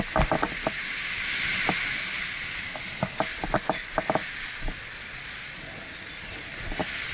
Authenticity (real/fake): real